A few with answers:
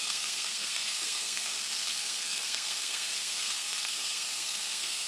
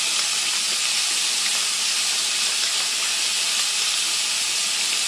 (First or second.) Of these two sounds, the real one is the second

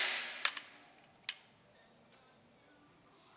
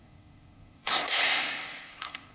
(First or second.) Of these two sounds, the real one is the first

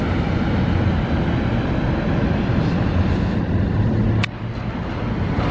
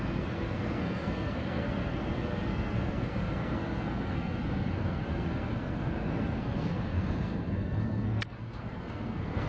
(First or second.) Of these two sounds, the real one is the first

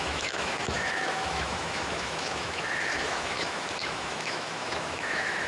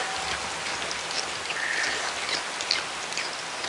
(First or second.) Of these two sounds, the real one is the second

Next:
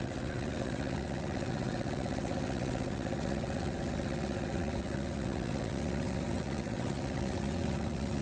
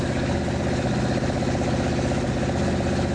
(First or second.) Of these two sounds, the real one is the second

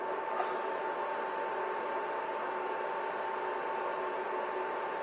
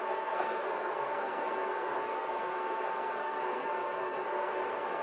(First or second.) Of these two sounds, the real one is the first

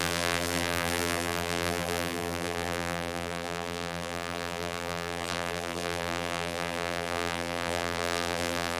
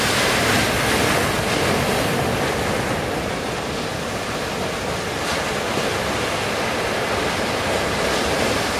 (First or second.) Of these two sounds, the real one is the second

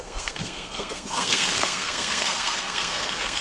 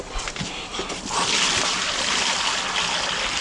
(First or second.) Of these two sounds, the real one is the second